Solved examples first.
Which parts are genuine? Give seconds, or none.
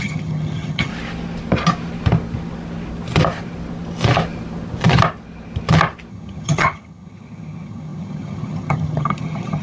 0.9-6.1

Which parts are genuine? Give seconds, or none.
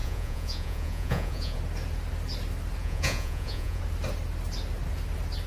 1.6-2.8; 3.8-5.5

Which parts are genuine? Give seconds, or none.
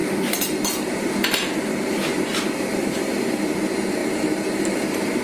3.1-5.2